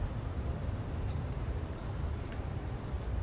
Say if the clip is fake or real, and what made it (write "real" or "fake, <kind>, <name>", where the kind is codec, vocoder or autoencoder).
fake, vocoder, BigVGAN v2